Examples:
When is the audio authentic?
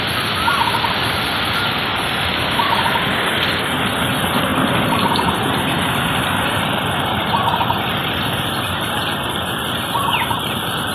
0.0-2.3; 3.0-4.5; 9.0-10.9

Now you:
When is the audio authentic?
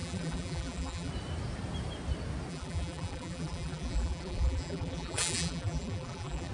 1.1-2.5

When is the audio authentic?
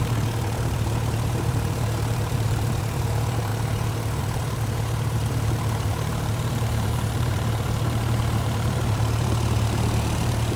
3.5-4.2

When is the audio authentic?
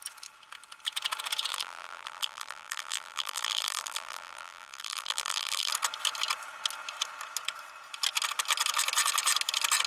0.0-1.5; 5.7-9.9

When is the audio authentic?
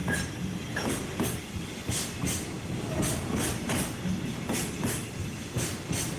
0.0-6.2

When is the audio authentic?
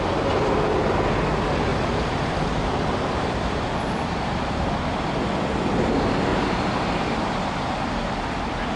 0.0-1.7; 4.7-6.3; 7.4-8.8